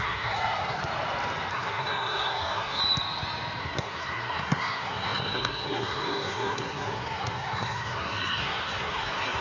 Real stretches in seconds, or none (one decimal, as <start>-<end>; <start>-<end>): 0.8-1.5; 2.8-3.6